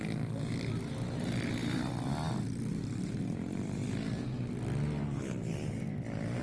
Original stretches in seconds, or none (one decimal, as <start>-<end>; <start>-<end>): 0.0-6.4